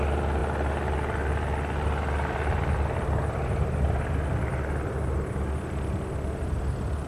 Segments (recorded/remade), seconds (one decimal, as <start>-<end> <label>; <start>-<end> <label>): 0.0-7.1 recorded